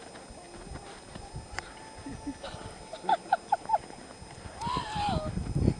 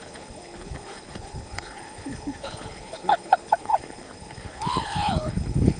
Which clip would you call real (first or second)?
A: first